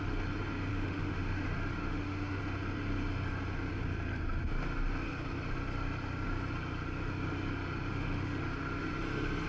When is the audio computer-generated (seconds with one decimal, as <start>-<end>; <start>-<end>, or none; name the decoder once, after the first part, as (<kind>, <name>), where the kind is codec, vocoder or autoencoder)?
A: 0.7-1.4 (autoencoder, DAC-VAE); 1.8-2.4; 7.9-8.4